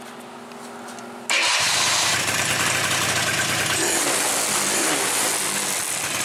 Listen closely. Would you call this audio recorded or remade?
recorded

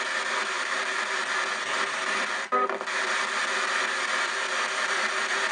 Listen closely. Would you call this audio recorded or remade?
recorded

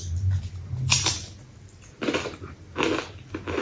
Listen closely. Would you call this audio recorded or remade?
recorded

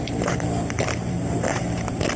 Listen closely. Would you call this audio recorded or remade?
remade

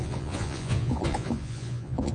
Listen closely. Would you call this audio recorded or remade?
remade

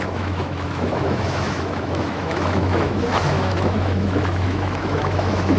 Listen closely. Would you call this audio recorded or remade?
remade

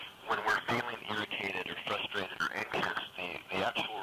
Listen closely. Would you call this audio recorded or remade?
remade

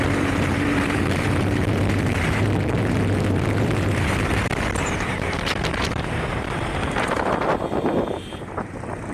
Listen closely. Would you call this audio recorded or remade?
remade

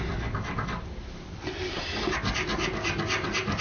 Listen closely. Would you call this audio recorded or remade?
recorded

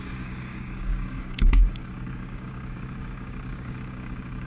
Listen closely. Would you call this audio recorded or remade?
remade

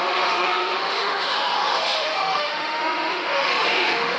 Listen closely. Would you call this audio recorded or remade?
remade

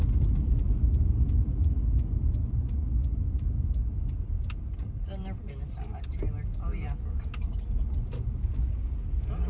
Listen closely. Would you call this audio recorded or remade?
recorded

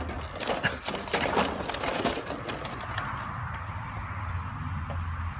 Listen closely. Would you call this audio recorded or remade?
recorded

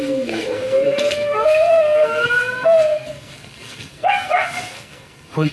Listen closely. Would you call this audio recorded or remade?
remade